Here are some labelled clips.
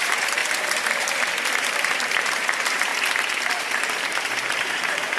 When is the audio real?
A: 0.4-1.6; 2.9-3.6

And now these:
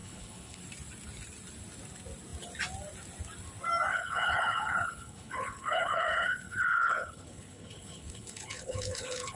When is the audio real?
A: 0.6-3.9